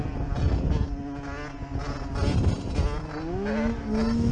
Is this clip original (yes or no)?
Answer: yes